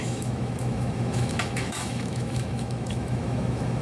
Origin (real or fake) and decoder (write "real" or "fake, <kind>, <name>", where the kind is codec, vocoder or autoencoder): fake, autoencoder, DAC-VAE